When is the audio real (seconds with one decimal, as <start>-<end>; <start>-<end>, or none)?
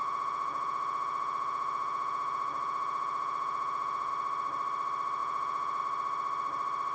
4.1-5.2; 5.8-6.9